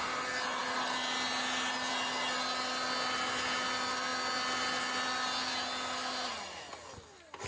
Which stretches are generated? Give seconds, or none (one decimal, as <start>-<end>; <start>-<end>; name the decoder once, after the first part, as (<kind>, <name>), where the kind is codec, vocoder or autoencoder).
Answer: none